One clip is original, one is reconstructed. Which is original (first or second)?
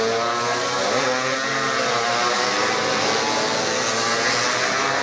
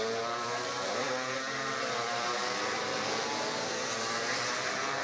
first